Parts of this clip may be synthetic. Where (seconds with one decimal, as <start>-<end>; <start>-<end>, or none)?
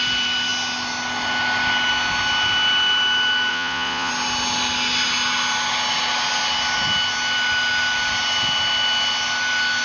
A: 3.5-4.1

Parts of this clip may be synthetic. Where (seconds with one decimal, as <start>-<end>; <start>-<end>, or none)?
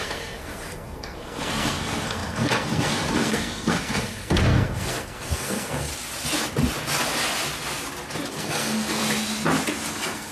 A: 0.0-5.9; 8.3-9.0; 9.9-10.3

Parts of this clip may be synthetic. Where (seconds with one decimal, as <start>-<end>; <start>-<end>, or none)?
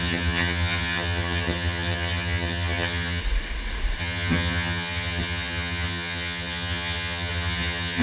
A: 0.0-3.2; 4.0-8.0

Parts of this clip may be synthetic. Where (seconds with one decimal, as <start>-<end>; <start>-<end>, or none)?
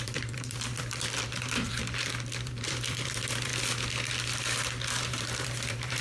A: 0.0-3.5; 5.0-6.0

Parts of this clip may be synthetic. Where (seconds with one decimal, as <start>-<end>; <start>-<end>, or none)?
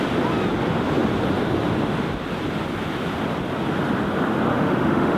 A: 4.5-5.2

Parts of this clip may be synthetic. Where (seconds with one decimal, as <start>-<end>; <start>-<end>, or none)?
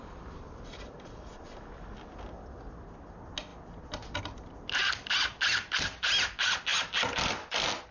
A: none